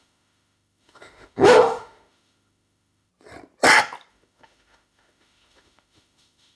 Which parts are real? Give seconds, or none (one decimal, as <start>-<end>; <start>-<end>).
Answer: 3.1-4.1